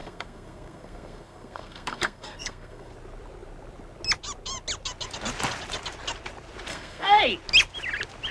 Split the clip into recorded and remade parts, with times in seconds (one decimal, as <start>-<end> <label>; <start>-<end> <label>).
0.0-2.9 remade; 2.9-6.7 recorded; 6.7-7.2 remade; 7.2-8.3 recorded